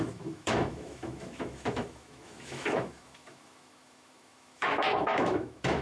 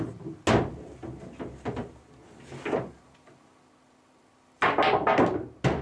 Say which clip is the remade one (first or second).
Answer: first